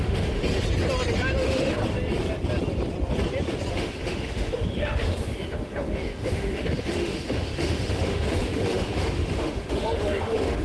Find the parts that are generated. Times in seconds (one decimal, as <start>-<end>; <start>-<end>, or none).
0.0-0.4; 1.4-1.8; 3.7-10.6